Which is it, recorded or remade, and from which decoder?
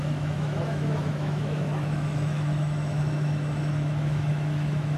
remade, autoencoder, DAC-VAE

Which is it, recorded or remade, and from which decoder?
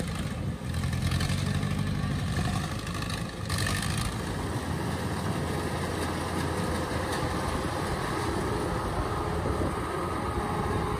recorded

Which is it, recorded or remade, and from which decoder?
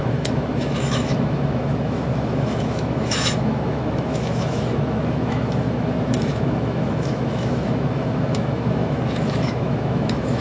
remade, autoencoder, DAC-VAE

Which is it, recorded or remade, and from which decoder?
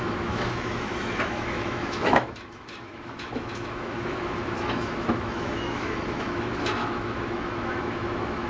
remade, autoencoder, DAC-VAE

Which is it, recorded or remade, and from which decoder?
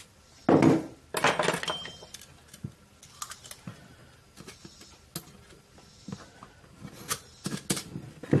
recorded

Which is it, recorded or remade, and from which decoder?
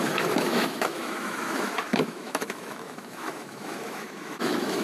remade, autoencoder, DAC-VAE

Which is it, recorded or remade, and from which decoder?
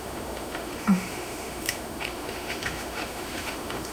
remade, autoencoder, DAC-VAE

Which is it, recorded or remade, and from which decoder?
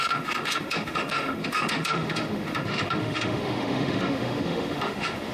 remade, autoencoder, DAC-VAE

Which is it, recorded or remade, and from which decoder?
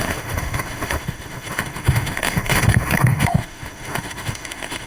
remade, autoencoder, DAC-VAE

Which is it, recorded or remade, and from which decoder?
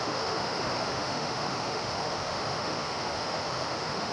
remade, autoencoder, DAC-VAE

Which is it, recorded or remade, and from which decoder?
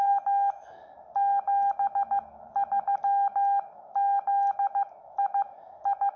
remade, autoencoder, DAC-VAE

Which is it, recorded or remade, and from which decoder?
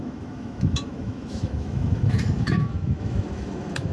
remade, autoencoder, DAC-VAE